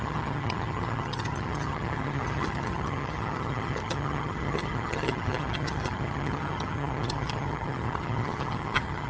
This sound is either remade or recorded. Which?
remade